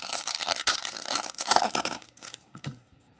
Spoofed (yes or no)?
yes